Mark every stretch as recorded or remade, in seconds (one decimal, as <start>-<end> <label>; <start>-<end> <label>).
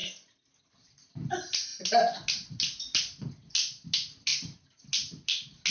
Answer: 0.0-5.7 recorded